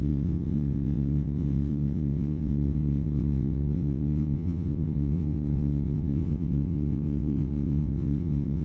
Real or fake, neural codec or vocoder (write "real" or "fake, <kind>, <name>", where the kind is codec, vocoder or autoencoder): fake, vocoder, WaveNeXt